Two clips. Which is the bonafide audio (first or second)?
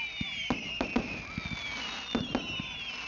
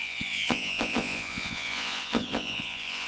first